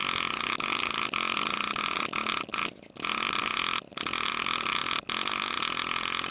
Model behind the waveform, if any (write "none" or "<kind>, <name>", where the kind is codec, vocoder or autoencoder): none